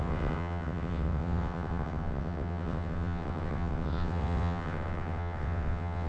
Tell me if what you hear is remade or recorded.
remade